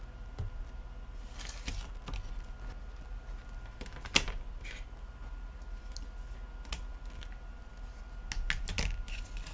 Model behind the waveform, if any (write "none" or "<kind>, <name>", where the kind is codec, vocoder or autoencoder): none